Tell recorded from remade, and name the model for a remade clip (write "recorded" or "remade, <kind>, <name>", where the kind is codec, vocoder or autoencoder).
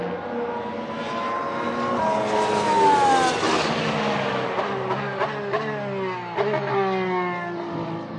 recorded